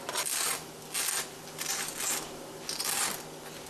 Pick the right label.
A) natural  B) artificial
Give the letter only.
A